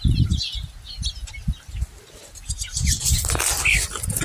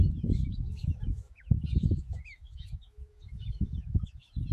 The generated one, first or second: second